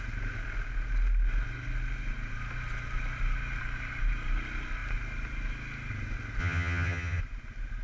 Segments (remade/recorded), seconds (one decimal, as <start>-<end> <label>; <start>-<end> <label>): 0.0-6.4 recorded; 6.4-7.2 remade; 7.2-7.8 recorded